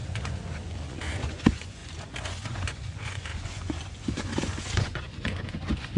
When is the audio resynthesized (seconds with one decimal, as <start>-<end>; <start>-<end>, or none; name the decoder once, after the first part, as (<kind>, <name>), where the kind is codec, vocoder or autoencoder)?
0.0-6.0 (vocoder, Vocos)